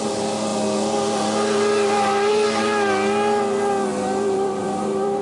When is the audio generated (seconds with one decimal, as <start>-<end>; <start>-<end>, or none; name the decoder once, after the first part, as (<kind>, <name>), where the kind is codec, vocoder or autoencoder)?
3.9-5.2 (vocoder, BigVGAN v2)